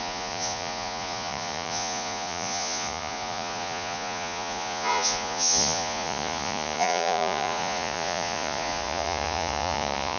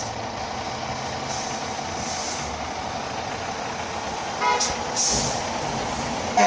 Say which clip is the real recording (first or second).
second